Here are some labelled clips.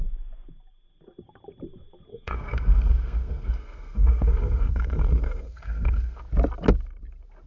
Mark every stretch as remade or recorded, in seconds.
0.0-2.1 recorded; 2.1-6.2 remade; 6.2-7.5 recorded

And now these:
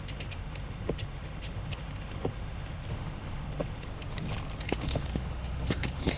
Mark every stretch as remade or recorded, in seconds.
0.0-3.9 remade; 3.9-4.6 recorded; 4.6-6.2 remade

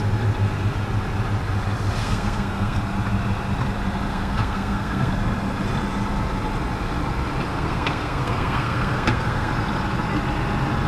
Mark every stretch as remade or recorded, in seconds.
0.0-2.0 recorded; 2.0-2.8 remade; 2.8-4.1 recorded; 4.1-5.1 remade; 5.1-7.5 recorded; 7.5-9.5 remade; 9.5-10.9 recorded

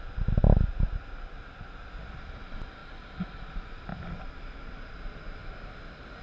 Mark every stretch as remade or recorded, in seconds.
0.0-2.8 recorded; 2.8-3.4 remade; 3.4-5.4 recorded; 5.4-6.2 remade

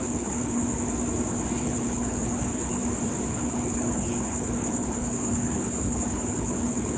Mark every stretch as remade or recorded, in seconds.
0.0-0.6 remade; 0.6-1.6 recorded; 1.6-2.8 remade; 2.8-3.3 recorded; 3.3-7.0 remade